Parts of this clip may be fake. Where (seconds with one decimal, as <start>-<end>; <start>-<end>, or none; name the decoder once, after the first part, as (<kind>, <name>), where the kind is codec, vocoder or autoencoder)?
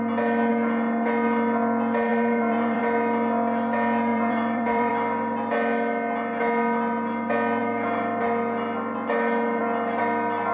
2.1-2.8 (vocoder, BigVGAN v2); 4.1-4.9